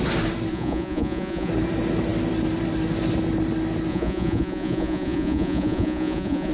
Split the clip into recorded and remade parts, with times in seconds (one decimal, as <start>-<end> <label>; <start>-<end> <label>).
0.0-0.5 recorded; 0.5-1.5 remade; 1.5-3.9 recorded; 3.9-6.5 remade

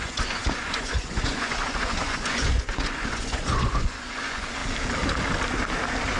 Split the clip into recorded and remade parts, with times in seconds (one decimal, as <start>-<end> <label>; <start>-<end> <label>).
0.0-4.6 remade; 4.6-6.2 recorded

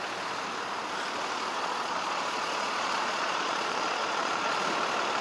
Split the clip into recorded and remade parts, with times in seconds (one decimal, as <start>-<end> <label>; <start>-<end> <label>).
0.0-1.5 recorded; 1.5-4.6 remade; 4.6-5.2 recorded